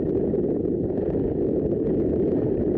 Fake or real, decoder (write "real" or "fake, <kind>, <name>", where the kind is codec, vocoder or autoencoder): real